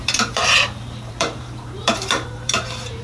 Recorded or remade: remade